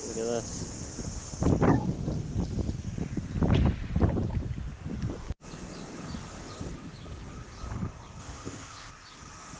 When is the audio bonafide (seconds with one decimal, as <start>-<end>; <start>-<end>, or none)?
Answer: 0.0-8.2; 8.9-9.6